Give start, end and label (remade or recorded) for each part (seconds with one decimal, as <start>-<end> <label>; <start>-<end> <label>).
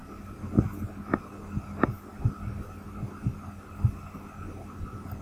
0.0-5.2 recorded